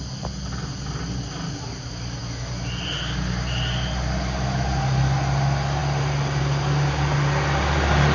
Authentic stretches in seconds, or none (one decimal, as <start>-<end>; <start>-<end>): 0.0-5.8; 6.4-8.1